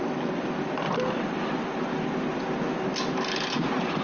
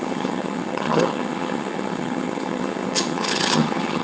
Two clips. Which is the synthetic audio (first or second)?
second